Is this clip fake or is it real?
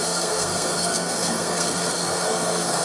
fake